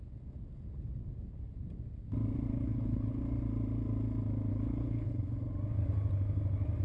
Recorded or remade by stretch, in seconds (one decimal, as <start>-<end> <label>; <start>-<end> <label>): 0.0-2.5 recorded; 2.5-3.2 remade; 3.2-4.5 recorded; 4.5-5.4 remade; 5.4-6.8 recorded